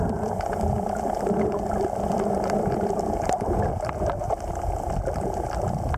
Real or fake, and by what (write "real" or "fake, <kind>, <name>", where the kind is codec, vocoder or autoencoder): real